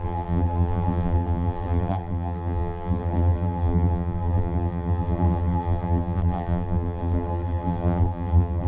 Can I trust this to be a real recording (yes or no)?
no